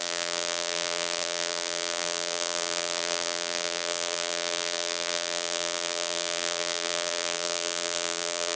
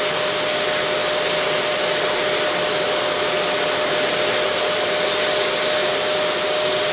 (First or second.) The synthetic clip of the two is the first